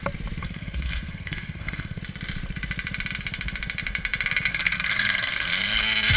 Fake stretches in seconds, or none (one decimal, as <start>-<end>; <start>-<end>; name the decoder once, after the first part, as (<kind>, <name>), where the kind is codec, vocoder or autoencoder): 0.4-2.0 (codec, SNAC); 4.5-5.8